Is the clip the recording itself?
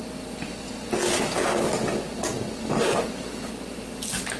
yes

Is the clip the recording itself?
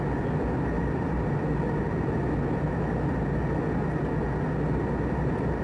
yes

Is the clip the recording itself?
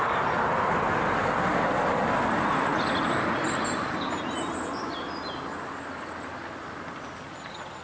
yes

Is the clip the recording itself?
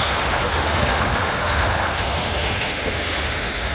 no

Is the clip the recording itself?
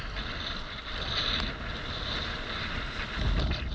yes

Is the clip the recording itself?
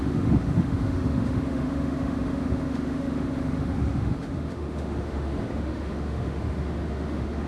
no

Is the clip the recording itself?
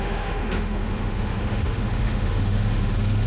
no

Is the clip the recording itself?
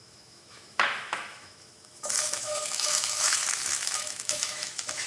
no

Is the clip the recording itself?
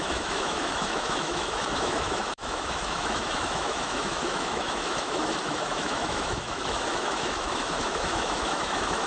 no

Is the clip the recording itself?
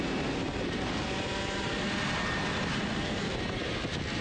yes